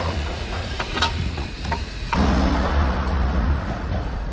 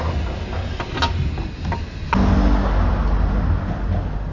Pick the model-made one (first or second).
first